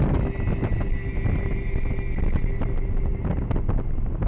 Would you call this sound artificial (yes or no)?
no